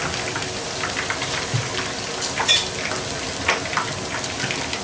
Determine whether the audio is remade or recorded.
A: recorded